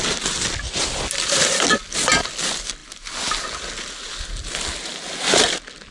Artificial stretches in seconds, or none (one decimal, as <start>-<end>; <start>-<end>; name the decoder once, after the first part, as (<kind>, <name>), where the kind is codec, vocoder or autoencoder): none